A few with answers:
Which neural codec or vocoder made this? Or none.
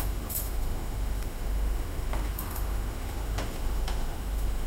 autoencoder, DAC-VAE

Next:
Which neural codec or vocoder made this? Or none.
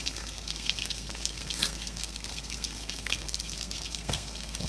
codec, SNAC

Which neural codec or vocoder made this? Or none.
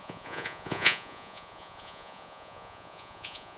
vocoder, Vocos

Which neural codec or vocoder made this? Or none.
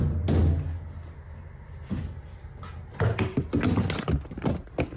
none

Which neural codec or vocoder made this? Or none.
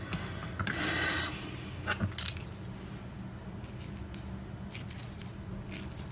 none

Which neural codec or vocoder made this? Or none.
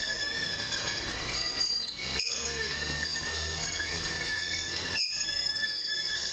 codec, SNAC